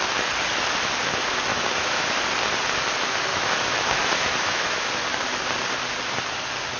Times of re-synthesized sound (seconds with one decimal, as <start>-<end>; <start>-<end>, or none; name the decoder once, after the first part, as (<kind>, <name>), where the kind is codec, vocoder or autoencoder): 1.5-2.2 (autoencoder, DAC-VAE); 3.3-4.9